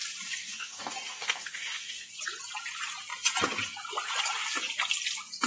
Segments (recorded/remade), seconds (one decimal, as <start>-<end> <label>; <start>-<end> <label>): 0.0-0.4 recorded; 0.4-2.1 remade; 2.1-5.5 recorded